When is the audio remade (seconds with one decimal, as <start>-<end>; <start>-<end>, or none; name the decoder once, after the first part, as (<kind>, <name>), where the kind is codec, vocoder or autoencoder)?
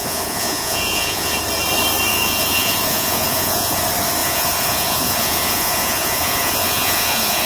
0.0-1.4 (vocoder, Vocos); 2.1-3.8; 4.2-7.5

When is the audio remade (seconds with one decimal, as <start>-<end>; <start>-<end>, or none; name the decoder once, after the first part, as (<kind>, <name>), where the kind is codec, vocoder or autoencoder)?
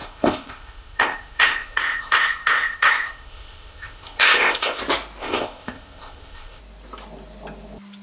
0.0-4.8 (codec, ZipCodec); 5.2-6.6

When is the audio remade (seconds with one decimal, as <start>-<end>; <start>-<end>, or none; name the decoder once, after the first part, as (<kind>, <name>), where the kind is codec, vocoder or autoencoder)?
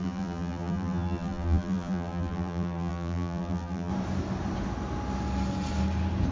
0.0-3.9 (vocoder, BigVGAN v2)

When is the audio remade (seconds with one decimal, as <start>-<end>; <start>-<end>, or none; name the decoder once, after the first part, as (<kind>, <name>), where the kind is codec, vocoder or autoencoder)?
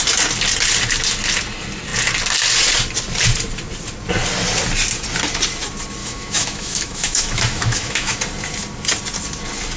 6.0-8.2 (autoencoder, DAC-VAE)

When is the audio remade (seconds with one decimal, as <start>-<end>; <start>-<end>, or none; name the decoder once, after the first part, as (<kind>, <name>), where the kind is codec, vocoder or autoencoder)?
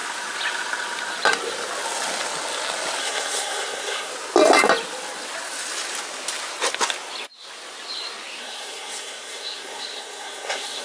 3.0-4.1 (codec, SNAC); 8.4-10.8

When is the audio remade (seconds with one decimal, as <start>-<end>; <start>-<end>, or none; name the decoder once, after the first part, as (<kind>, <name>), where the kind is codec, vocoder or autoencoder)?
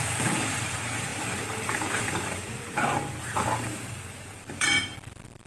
0.0-5.5 (vocoder, BigVGAN v2)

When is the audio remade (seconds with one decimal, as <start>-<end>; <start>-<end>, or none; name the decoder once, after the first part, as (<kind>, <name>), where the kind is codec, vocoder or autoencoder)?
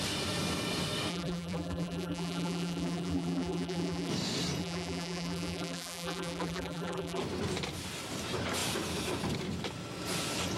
1.1-4.1 (vocoder, BigVGAN v2); 4.6-7.2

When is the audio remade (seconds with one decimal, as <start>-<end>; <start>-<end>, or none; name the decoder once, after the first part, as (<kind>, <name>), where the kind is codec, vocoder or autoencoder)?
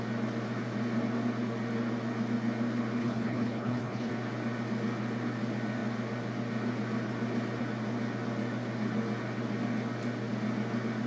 3.0-4.1 (codec, HILCodec)